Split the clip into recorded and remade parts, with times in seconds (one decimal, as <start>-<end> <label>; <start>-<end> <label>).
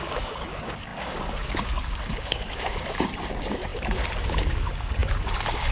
0.0-5.7 remade